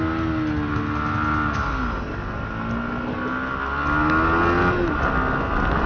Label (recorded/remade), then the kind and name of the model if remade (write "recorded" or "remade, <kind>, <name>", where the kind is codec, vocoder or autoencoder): recorded